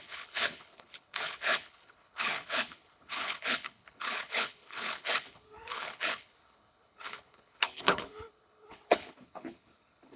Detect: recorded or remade remade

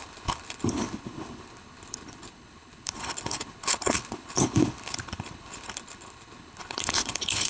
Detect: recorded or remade remade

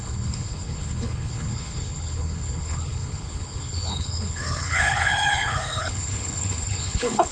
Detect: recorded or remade remade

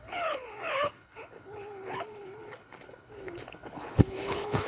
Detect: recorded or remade remade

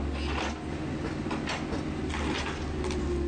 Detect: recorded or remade recorded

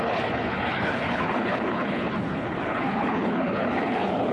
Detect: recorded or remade remade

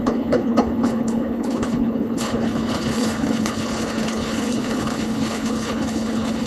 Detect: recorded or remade remade